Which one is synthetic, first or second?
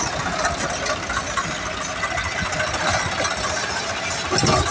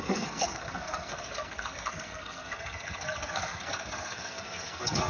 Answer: second